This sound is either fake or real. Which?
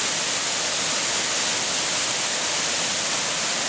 real